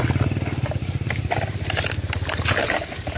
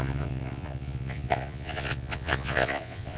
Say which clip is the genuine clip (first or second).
first